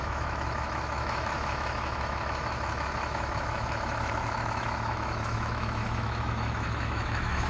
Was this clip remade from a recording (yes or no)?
yes